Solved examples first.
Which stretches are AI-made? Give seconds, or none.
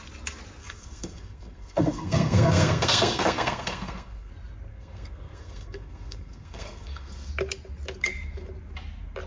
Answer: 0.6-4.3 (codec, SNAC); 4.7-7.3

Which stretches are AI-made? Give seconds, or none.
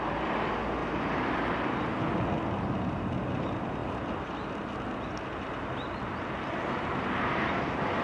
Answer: 0.8-2.1 (vocoder, BigVGAN v2)